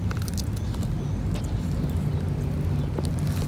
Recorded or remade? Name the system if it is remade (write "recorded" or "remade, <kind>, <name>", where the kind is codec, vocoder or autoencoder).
recorded